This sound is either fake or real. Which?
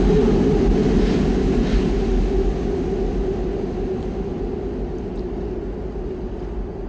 real